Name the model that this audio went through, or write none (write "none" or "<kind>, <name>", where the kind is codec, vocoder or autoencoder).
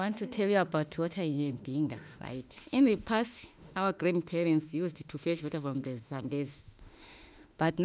autoencoder, DAC-VAE